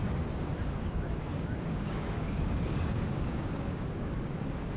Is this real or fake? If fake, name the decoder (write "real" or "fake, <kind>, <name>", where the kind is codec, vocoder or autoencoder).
fake, codec, DAC